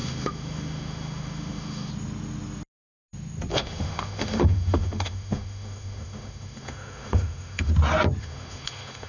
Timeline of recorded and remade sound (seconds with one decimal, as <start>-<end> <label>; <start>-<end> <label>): 0.0-1.9 remade; 1.9-3.5 recorded; 3.5-7.7 remade; 7.7-8.2 recorded; 8.2-9.1 remade